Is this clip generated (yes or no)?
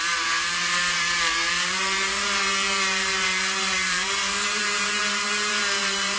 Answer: yes